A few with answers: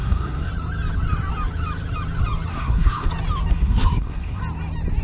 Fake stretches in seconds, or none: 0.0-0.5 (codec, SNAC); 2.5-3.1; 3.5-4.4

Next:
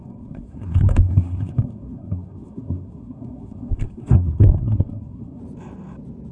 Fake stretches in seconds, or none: 0.0-5.4 (codec, SNAC)

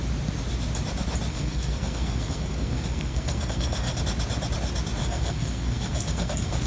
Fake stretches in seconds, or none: 1.3-4.0 (codec, SNAC); 5.0-6.7

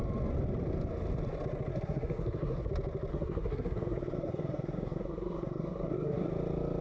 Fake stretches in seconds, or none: 1.7-2.7 (codec, SNAC); 3.1-6.3

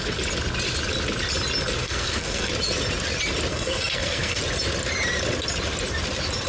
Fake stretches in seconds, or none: 1.8-2.5 (codec, SNAC); 3.5-4.4

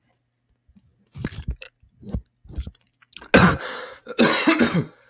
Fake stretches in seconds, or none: none

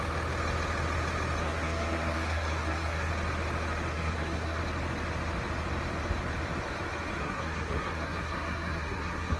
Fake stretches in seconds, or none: 1.4-3.1 (codec, SNAC); 3.9-4.6; 7.2-9.4

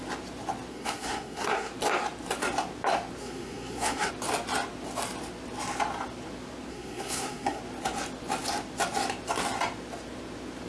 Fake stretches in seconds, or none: 0.7-1.7 (codec, SNAC); 3.2-4.1; 6.7-7.6